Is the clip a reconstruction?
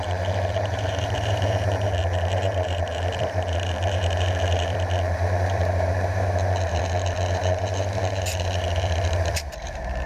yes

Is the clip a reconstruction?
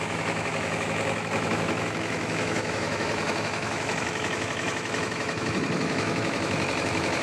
yes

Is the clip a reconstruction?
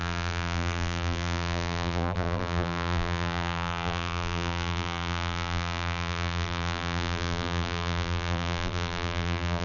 yes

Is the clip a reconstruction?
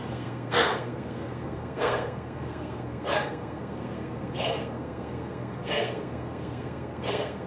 yes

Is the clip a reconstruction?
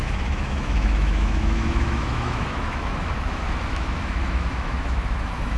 yes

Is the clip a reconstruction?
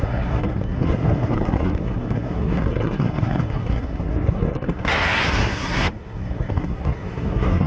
yes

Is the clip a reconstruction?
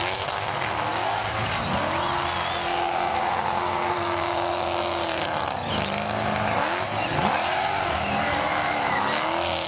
no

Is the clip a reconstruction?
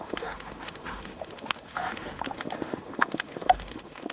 yes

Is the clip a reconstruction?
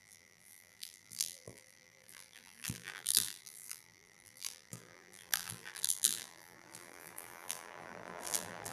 yes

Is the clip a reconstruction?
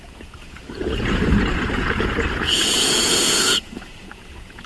yes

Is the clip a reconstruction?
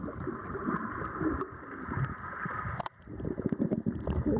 no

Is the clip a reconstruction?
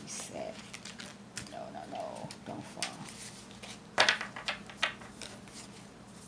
no